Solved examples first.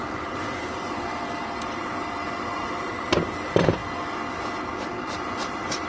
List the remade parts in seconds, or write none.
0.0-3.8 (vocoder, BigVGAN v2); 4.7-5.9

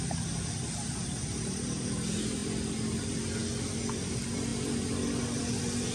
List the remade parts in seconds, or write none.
none

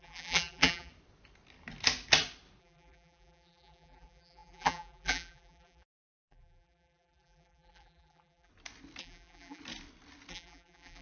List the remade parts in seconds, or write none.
0.0-0.9 (vocoder, BigVGAN v2); 2.6-8.5; 9.0-9.6; 10.3-11.0

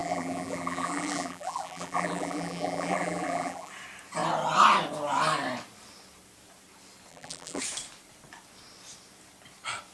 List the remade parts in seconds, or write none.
0.0-3.7 (vocoder, BigVGAN v2); 7.1-7.6

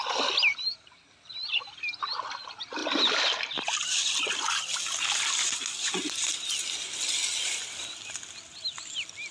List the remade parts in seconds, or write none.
0.5-1.1 (vocoder, BigVGAN v2)